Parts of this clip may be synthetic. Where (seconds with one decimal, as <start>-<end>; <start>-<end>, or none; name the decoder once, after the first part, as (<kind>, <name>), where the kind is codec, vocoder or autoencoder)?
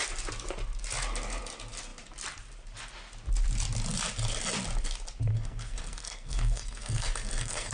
5.3-7.7 (codec, SNAC)